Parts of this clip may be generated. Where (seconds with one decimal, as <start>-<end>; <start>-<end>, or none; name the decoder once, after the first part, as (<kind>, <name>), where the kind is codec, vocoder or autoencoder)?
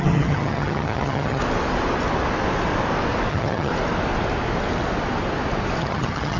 0.0-1.4 (vocoder, HiFi-GAN); 3.3-3.7; 5.8-6.4